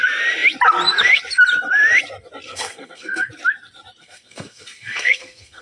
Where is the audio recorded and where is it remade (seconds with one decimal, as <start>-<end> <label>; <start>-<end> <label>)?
0.0-2.5 recorded; 2.5-3.3 remade; 3.3-4.0 recorded; 4.0-5.6 remade